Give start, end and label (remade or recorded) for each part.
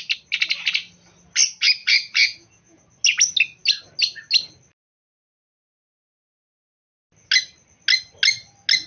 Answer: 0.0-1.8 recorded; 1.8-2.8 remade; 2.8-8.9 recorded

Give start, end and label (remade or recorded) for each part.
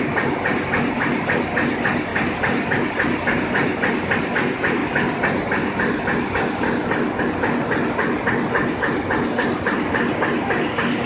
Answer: 0.0-11.1 recorded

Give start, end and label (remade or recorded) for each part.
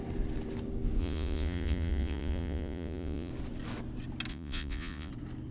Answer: 0.0-1.0 recorded; 1.0-3.3 remade; 3.3-4.3 recorded; 4.3-5.1 remade; 5.1-5.5 recorded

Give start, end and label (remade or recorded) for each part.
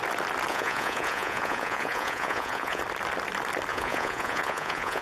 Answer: 0.0-0.5 recorded; 0.5-2.8 remade; 2.8-3.7 recorded; 3.7-5.0 remade